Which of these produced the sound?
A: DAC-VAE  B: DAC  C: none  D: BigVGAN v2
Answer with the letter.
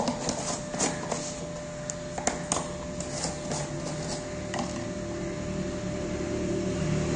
C